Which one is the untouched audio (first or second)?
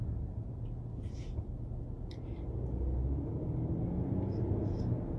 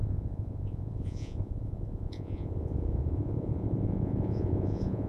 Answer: first